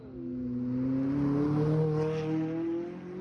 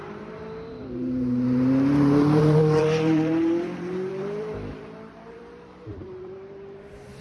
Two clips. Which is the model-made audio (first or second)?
second